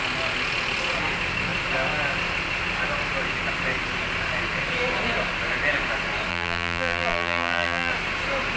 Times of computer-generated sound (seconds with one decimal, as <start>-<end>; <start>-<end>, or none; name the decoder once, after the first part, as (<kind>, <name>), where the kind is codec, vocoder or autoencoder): 6.3-7.9 (vocoder, BigVGAN v2)